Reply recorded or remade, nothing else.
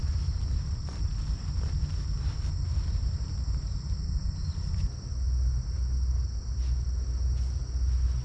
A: recorded